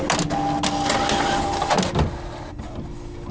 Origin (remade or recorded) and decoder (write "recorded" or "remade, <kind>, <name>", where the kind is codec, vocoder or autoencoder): recorded